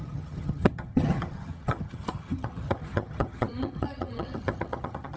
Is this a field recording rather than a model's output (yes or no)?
no